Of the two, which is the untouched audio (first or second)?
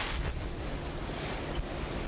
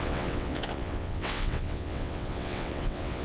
first